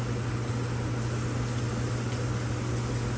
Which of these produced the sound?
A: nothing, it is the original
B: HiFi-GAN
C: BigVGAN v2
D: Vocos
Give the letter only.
A